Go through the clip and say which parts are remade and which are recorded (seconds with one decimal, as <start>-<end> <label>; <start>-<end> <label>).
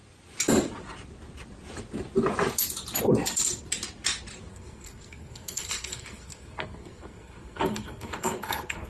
0.0-4.5 recorded; 4.5-8.9 remade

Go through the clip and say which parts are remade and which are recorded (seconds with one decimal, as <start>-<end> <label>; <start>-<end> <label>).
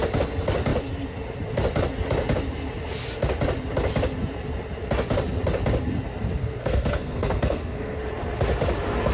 0.0-6.4 recorded; 6.4-8.0 remade; 8.0-9.1 recorded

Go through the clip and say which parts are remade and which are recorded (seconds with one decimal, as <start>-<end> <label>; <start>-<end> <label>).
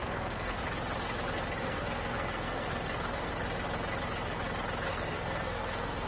0.0-0.6 remade; 0.6-1.6 recorded; 1.6-3.3 remade; 3.3-4.9 recorded; 4.9-6.1 remade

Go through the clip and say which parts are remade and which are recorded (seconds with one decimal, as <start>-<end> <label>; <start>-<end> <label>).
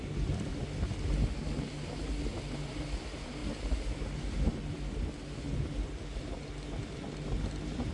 0.0-7.9 recorded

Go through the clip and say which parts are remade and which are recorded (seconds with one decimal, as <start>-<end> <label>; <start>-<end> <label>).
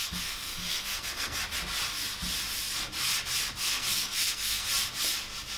0.0-1.4 remade; 1.4-3.6 recorded; 3.6-4.7 remade; 4.7-5.6 recorded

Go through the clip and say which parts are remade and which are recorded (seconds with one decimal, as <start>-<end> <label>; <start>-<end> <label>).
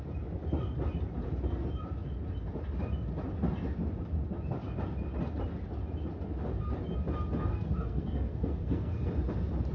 0.0-7.5 recorded; 7.5-9.1 remade; 9.1-9.7 recorded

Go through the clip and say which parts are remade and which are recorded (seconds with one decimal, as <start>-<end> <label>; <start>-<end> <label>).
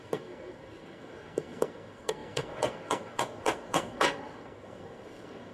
0.0-5.5 remade